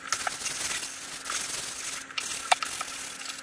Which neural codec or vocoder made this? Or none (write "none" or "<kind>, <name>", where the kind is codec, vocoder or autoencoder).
none